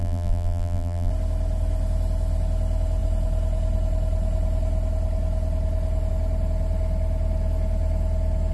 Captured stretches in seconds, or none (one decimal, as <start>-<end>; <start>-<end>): 1.1-8.5